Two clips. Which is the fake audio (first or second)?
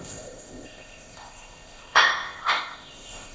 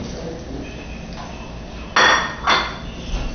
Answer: first